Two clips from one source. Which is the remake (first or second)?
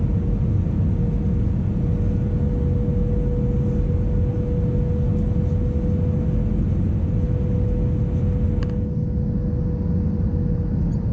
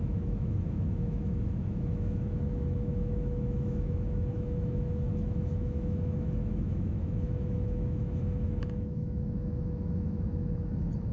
second